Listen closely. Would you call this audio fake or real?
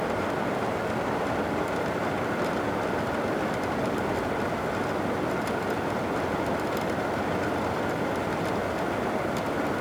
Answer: real